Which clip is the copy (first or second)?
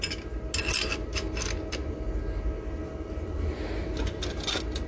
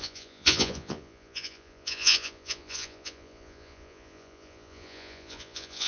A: second